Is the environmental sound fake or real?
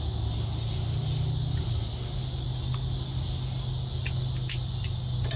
real